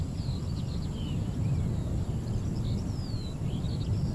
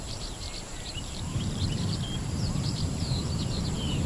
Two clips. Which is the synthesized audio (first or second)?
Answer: second